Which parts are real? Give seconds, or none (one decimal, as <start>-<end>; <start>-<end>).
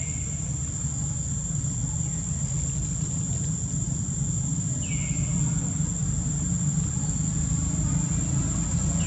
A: 0.0-9.1